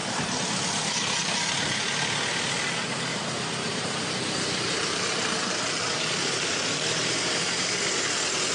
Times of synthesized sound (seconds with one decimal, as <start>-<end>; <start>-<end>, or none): 3.1-8.1